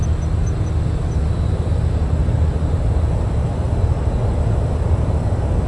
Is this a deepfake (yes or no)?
no